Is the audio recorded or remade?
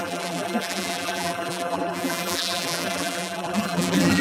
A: remade